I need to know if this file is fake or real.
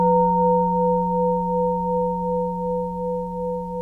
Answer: real